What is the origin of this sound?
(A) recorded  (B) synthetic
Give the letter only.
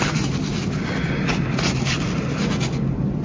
A